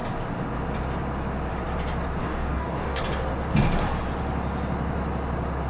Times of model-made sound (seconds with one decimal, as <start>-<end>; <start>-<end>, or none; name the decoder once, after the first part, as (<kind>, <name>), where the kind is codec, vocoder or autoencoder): 2.2-3.0 (codec, DAC)